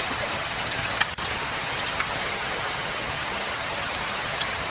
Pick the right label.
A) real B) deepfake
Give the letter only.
B